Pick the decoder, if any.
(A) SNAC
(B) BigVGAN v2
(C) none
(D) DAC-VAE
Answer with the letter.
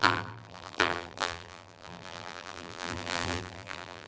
B